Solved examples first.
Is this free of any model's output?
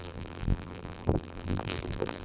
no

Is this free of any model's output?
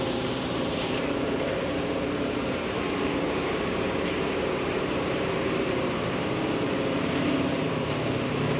no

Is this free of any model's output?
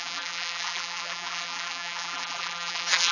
no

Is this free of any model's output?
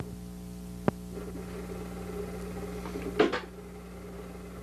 yes